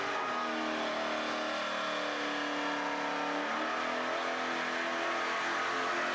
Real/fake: real